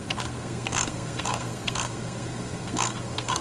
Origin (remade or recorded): remade